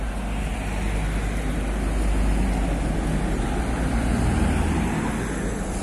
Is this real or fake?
real